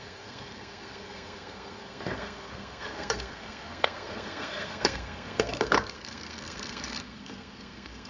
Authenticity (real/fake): fake